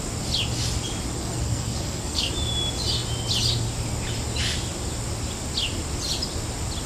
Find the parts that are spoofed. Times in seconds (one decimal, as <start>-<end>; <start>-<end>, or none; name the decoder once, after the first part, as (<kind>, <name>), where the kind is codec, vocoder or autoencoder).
1.2-2.3 (codec, SNAC)